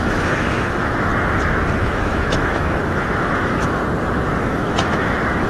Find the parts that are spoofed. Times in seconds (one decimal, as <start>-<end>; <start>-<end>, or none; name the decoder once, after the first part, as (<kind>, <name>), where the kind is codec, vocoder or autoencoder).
0.0-1.1 (autoencoder, DAC-VAE); 1.8-3.8; 4.4-5.5